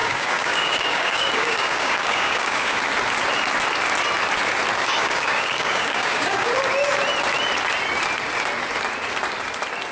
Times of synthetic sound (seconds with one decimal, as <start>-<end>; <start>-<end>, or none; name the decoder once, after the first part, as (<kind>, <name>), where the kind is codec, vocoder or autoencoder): 0.0-2.8 (codec, DAC); 5.0-6.5